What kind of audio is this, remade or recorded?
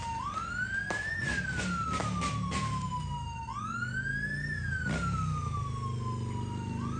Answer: recorded